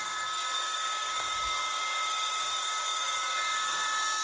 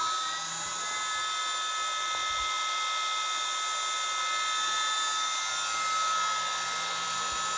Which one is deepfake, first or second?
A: first